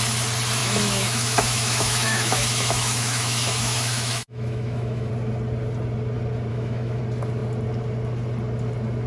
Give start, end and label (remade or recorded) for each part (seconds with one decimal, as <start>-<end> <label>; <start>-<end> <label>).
0.0-0.6 recorded; 0.6-5.1 remade; 5.1-6.5 recorded; 6.5-7.0 remade; 7.0-9.1 recorded